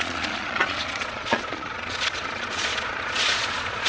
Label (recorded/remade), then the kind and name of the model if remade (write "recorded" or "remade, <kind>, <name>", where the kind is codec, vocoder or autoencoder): remade, vocoder, Vocos